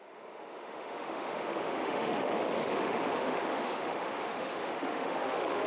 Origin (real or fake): fake